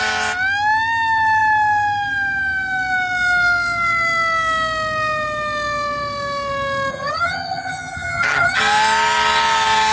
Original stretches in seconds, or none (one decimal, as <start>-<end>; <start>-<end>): 0.0-6.9; 8.6-9.9